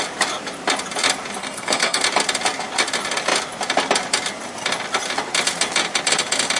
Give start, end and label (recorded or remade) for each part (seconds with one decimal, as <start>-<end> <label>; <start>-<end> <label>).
0.0-1.4 recorded; 1.4-2.0 remade; 2.0-6.6 recorded